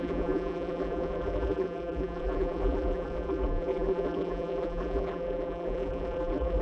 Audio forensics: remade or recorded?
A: remade